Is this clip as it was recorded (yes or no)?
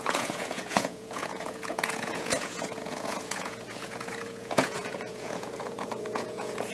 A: no